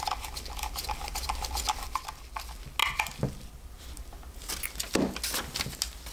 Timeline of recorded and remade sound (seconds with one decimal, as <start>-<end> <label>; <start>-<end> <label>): 0.0-6.1 recorded